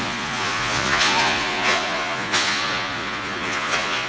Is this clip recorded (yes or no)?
no